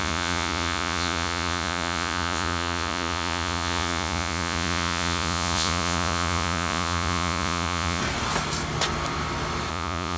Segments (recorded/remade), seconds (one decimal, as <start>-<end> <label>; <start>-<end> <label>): 0.0-8.0 remade; 8.0-9.7 recorded; 9.7-10.2 remade